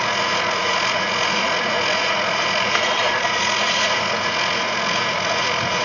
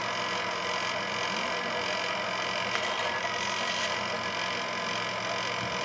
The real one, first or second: second